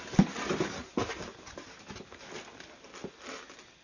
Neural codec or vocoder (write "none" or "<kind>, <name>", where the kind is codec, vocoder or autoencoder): none